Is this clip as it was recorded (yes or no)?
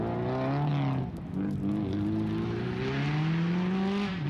yes